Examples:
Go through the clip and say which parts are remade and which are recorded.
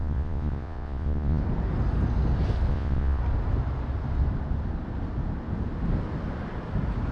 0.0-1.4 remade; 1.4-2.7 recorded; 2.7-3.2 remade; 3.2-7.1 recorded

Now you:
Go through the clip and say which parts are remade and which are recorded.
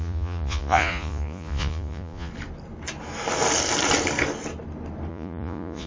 0.0-2.3 remade; 2.3-5.1 recorded; 5.1-5.9 remade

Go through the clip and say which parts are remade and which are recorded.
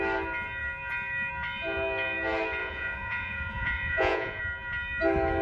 0.0-2.6 recorded; 2.6-4.4 remade; 4.4-5.4 recorded